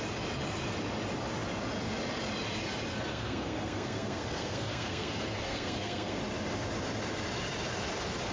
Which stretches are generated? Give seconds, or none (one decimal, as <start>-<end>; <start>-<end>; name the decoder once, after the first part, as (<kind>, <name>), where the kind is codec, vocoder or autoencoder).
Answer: 3.1-6.2 (codec, SNAC)